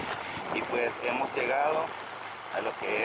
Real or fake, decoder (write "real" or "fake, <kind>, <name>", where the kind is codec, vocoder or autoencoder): real